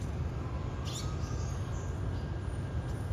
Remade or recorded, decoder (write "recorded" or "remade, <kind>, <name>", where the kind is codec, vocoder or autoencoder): recorded